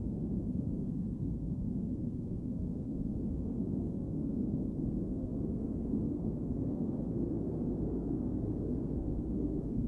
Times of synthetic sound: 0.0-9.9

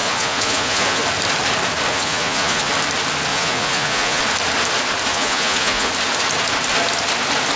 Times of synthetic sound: 0.0-1.0; 1.9-2.7; 3.3-4.2; 5.1-5.9